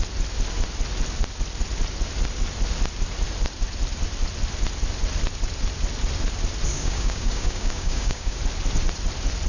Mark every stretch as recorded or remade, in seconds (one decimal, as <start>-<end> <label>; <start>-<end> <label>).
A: 0.0-6.7 recorded; 6.7-8.4 remade; 8.4-9.5 recorded